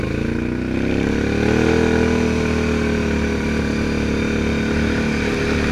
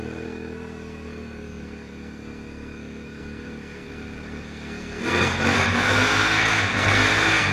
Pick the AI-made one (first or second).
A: second